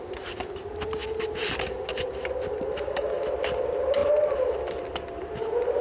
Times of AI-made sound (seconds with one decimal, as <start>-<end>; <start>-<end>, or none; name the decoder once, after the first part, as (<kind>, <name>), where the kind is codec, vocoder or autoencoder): none